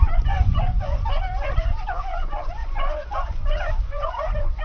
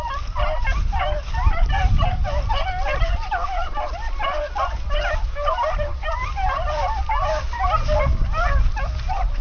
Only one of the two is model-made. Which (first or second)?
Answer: first